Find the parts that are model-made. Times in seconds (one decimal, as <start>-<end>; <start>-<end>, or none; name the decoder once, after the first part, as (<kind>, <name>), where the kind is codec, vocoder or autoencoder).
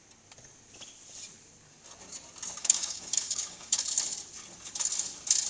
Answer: 2.6-3.8 (codec, DAC)